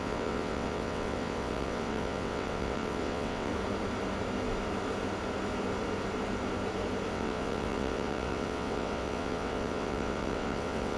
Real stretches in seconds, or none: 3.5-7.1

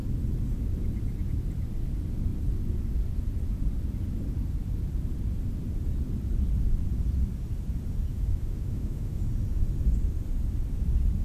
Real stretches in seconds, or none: 0.0-8.1; 9.2-11.2

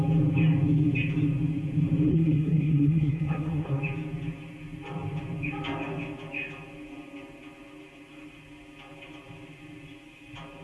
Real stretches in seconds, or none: 0.0-2.1; 3.8-10.6

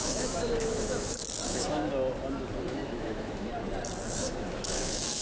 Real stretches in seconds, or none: 1.8-2.6; 3.5-4.2